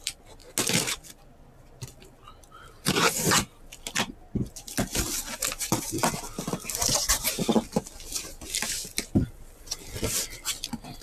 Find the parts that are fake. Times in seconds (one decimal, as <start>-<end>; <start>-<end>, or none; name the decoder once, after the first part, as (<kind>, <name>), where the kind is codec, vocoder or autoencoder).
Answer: 0.0-0.4 (vocoder, BigVGAN v2); 0.9-11.0